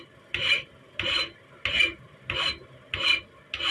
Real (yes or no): yes